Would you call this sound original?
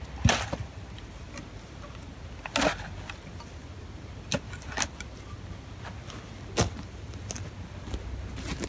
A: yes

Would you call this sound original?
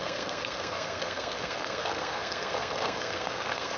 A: no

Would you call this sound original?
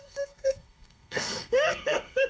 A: no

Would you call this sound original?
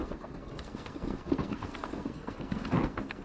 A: no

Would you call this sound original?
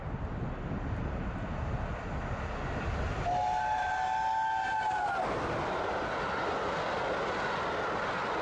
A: yes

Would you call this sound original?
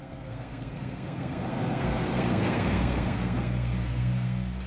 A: no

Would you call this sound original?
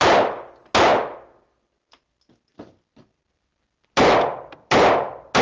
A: yes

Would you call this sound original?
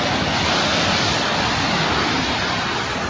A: yes